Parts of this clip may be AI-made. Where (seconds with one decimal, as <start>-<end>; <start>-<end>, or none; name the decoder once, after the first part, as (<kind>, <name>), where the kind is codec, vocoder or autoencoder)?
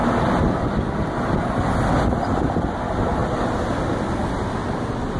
none